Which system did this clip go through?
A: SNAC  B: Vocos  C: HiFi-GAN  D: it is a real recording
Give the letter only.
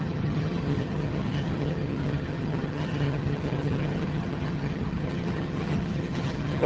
C